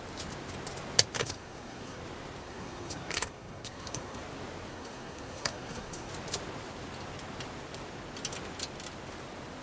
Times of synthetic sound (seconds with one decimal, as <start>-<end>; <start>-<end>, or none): 1.2-2.0; 2.4-4.2; 4.7-6.1